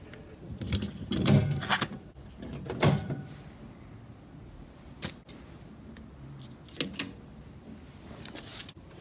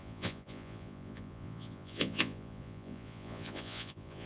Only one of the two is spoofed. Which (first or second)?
second